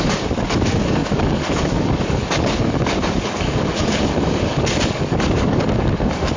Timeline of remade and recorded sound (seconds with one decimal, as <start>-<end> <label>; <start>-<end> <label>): 0.0-6.4 remade